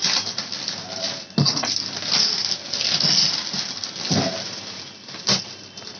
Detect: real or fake real